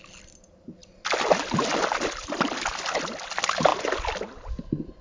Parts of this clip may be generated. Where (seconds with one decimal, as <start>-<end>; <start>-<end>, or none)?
none